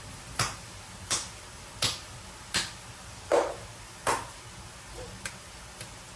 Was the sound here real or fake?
real